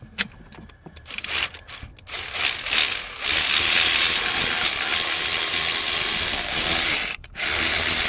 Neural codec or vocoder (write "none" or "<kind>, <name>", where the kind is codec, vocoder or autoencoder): none